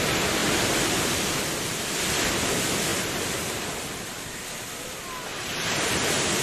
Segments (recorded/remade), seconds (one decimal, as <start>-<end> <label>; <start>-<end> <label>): 0.0-0.4 recorded; 0.4-1.4 remade; 1.4-5.3 recorded; 5.3-6.4 remade